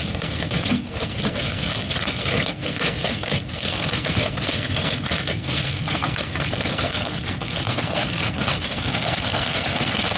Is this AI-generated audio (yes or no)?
yes